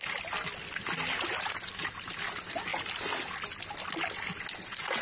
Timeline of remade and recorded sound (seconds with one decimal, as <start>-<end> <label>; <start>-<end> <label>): 0.0-5.0 recorded